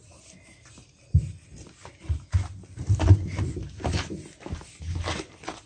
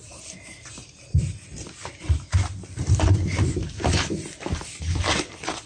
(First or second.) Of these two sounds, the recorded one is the first